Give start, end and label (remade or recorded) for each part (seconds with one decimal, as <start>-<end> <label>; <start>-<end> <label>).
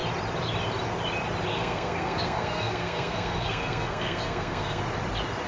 0.0-1.5 recorded; 1.5-4.8 remade; 4.8-5.5 recorded